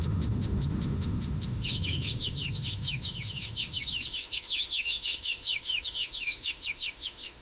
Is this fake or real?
fake